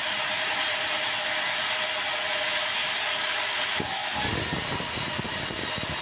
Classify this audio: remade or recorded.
recorded